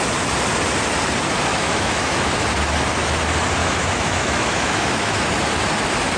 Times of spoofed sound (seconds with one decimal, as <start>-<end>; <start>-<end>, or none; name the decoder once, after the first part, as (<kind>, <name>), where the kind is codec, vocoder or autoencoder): 1.5-2.3 (autoencoder, DAC-VAE); 3.6-5.3